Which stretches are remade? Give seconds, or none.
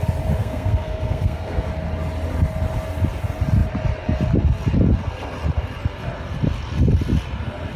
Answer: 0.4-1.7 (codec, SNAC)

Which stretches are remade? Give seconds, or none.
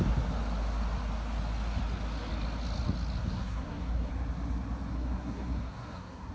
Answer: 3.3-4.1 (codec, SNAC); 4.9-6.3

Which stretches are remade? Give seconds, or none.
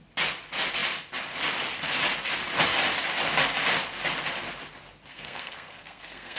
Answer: 5.1-6.4 (codec, SNAC)